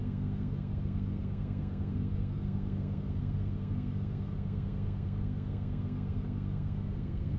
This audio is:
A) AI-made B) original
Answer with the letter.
A